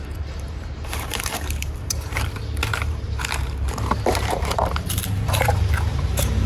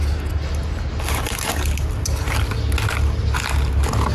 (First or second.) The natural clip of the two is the second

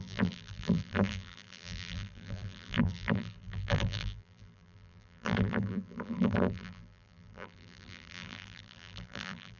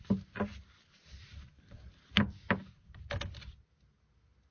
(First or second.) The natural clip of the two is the second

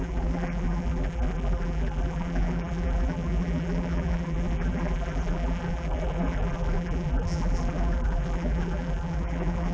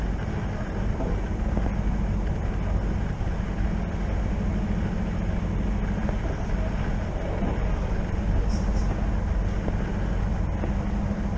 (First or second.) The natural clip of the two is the second